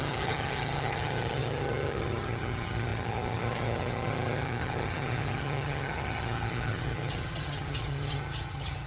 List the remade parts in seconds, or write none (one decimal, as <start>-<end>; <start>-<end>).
0.0-8.9